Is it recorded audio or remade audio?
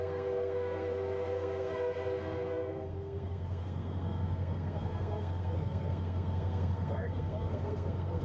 remade